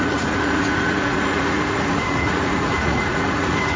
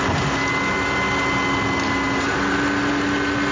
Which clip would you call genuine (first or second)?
second